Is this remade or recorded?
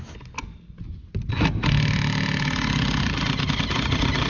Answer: recorded